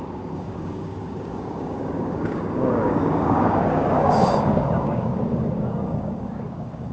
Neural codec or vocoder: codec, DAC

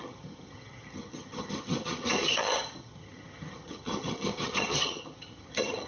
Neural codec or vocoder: vocoder, HiFi-GAN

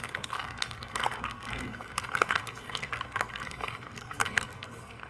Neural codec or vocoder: codec, SNAC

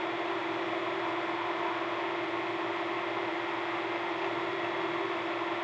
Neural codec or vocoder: none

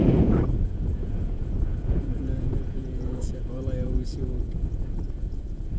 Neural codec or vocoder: vocoder, Vocos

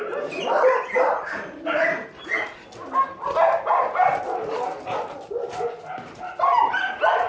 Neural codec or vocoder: none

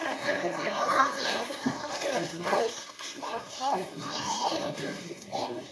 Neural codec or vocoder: codec, SNAC